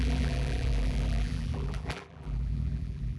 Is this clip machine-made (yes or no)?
yes